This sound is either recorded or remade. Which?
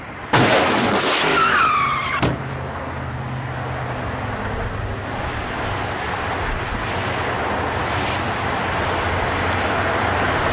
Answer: recorded